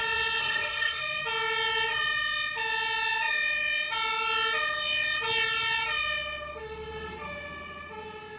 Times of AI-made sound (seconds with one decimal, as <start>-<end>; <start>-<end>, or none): 0.4-1.0